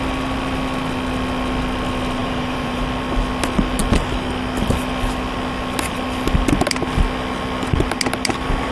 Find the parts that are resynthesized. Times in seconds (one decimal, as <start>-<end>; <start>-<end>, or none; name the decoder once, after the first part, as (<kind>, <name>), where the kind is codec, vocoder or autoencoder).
2.2-2.8 (vocoder, BigVGAN v2)